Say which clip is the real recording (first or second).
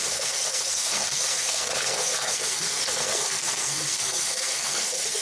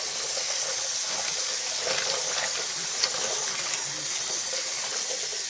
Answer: second